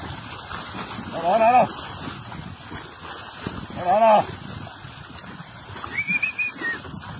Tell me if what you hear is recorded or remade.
recorded